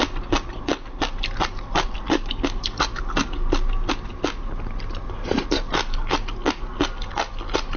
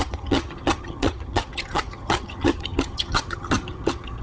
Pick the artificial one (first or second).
second